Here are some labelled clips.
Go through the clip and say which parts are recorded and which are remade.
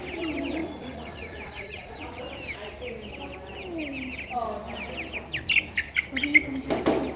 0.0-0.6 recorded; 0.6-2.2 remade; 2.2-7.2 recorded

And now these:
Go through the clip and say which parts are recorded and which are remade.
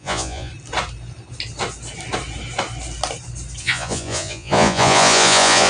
0.0-0.5 remade; 0.5-3.6 recorded; 3.6-5.7 remade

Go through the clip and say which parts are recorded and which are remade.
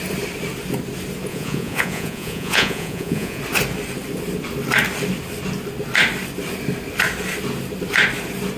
0.0-1.3 recorded; 1.3-3.4 remade; 3.4-8.6 recorded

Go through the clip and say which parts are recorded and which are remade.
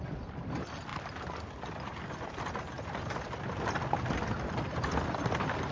0.0-5.7 recorded